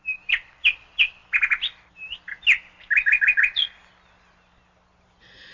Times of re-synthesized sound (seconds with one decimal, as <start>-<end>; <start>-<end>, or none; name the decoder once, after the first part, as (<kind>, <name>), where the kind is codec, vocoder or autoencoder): none